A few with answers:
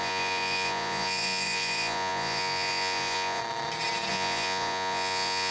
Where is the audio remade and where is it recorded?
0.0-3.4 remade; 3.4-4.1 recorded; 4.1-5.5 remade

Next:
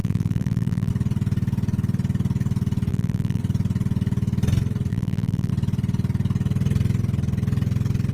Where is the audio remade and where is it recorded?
0.0-0.9 remade; 0.9-2.9 recorded; 2.9-3.4 remade; 3.4-4.9 recorded; 4.9-5.5 remade; 5.5-8.1 recorded

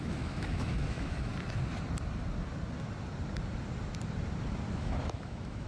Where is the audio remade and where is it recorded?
0.0-1.3 remade; 1.3-4.7 recorded; 4.7-5.7 remade

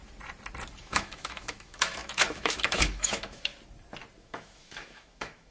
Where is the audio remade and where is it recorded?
0.0-0.8 recorded; 0.8-3.5 remade; 3.5-4.2 recorded; 4.2-5.5 remade

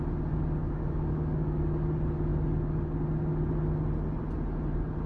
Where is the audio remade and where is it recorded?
0.0-0.6 recorded; 0.6-1.6 remade; 1.6-5.1 recorded

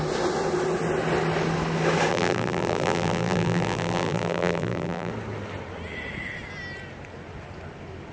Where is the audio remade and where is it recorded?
0.0-2.1 recorded; 2.1-5.1 remade; 5.1-8.1 recorded